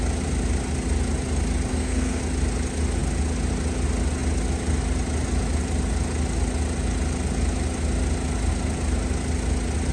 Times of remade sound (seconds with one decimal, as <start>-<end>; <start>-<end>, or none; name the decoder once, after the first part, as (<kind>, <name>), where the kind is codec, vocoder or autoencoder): 1.7-2.2 (codec, SNAC)